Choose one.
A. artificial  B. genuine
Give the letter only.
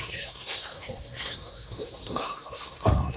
A